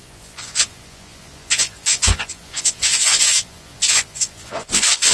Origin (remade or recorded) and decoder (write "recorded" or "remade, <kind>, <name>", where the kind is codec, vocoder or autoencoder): remade, vocoder, Vocos